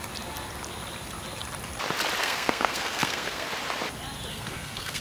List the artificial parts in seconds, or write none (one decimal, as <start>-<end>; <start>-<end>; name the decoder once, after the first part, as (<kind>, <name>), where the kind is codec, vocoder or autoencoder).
2.2-3.5 (codec, SNAC); 4.3-5.0

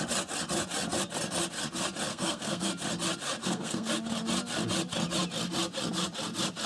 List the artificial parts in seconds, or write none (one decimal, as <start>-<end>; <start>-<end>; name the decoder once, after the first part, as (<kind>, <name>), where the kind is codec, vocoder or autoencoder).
2.1-2.7 (codec, SNAC); 3.4-3.9

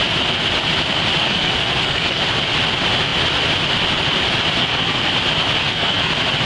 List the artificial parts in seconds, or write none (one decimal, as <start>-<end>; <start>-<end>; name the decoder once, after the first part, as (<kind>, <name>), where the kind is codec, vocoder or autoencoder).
1.2-2.2 (codec, SNAC); 4.6-5.1; 5.6-6.1

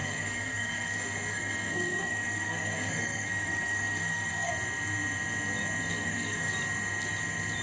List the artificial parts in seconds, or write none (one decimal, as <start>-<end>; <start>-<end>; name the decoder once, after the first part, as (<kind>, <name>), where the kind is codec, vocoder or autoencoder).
0.0-4.5 (codec, SNAC); 5.9-6.5

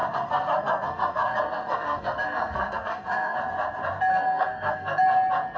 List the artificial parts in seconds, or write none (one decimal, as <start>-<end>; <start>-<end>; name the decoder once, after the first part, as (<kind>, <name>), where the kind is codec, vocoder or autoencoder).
0.0-3.4 (codec, SNAC); 4.1-5.0

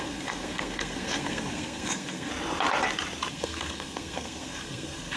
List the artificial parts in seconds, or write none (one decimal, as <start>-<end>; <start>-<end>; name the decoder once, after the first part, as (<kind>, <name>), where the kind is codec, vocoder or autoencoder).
0.0-2.3 (codec, SNAC); 3.3-5.2

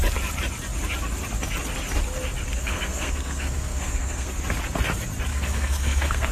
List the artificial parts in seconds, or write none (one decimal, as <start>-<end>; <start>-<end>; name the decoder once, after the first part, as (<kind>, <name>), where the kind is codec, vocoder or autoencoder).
2.6-4.3 (codec, SNAC); 5.3-6.3

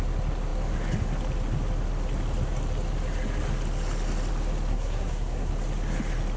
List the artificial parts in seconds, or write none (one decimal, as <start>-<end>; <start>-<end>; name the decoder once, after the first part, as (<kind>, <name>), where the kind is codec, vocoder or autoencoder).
4.7-5.5 (codec, SNAC)